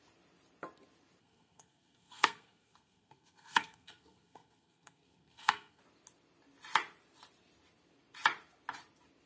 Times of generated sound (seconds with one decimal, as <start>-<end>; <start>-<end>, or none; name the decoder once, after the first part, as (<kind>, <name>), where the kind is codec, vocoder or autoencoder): 1.2-5.8 (codec, SNAC)